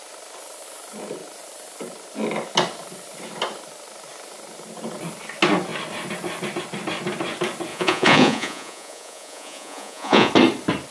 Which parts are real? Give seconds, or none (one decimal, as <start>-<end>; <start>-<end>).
0.0-7.7; 10.3-10.9